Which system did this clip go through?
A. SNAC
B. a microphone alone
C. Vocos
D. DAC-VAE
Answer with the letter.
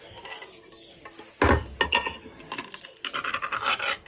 B